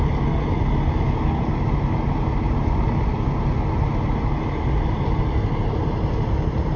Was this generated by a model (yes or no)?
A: no